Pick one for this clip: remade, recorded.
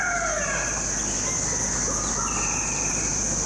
recorded